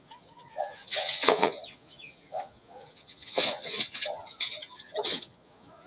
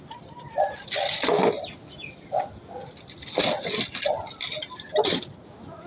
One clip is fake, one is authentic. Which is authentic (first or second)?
second